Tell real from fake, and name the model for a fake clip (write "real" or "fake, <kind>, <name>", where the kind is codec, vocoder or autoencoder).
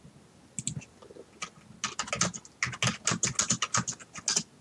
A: real